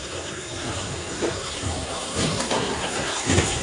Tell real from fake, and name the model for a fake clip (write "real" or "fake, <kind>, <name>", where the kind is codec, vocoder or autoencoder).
fake, codec, SNAC